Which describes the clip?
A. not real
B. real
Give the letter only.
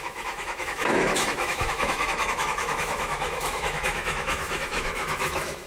A